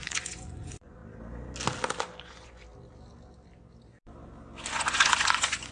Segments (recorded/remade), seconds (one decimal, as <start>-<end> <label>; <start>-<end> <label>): 0.0-1.0 remade; 1.0-2.2 recorded; 2.2-2.6 remade; 2.6-4.7 recorded; 4.7-5.7 remade